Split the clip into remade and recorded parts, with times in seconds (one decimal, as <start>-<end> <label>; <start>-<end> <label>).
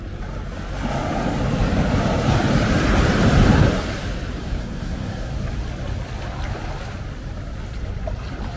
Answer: 0.0-4.4 recorded; 4.4-5.3 remade; 5.3-8.6 recorded